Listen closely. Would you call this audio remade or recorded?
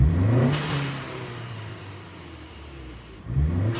remade